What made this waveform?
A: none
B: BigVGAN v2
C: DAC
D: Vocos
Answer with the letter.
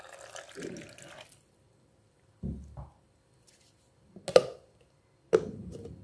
A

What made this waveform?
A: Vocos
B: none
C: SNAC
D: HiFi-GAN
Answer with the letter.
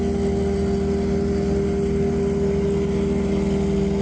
B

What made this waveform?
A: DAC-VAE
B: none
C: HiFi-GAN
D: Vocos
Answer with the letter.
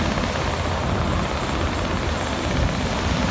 B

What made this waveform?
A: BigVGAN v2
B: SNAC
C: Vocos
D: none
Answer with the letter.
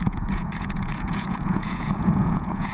C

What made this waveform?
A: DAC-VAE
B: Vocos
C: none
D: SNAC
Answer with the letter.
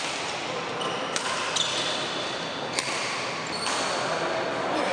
C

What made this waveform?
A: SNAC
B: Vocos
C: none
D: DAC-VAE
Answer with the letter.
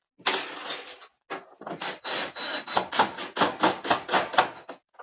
C